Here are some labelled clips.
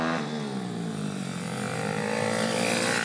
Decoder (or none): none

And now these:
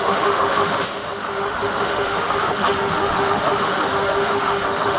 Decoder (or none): autoencoder, DAC-VAE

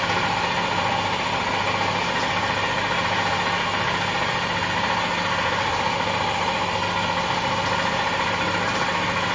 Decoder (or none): none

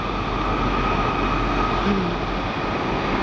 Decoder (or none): none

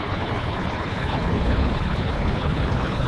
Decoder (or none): codec, HILCodec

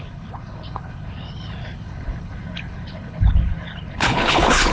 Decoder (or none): codec, HILCodec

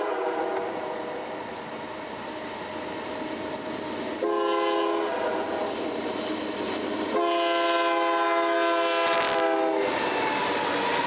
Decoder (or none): none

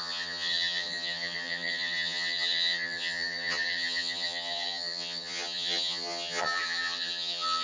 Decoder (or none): vocoder, HiFi-GAN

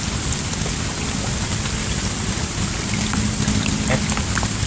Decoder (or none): none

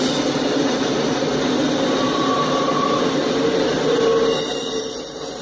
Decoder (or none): none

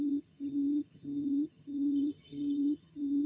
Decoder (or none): vocoder, HiFi-GAN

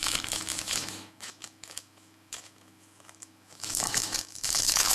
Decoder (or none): autoencoder, DAC-VAE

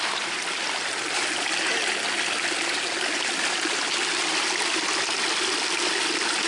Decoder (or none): none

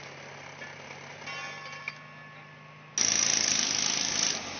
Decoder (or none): none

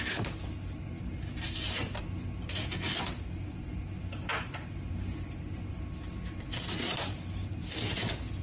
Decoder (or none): none